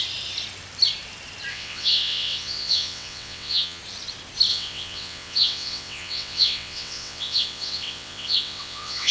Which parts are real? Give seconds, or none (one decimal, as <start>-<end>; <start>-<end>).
0.0-1.5; 3.8-4.5

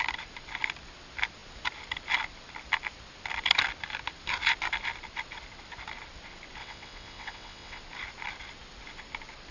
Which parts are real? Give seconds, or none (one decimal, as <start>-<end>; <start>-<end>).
0.0-6.6; 7.8-9.5

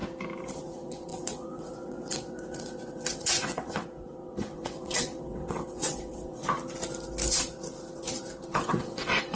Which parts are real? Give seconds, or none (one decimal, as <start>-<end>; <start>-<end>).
0.0-0.7; 6.4-8.6

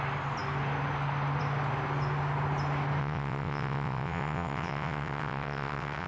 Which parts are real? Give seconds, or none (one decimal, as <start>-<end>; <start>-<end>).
0.0-3.0